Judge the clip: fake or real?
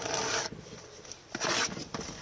real